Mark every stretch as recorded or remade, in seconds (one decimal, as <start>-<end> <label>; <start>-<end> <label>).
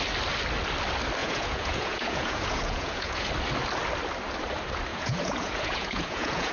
0.0-1.2 recorded; 1.2-3.3 remade; 3.3-4.9 recorded; 4.9-6.5 remade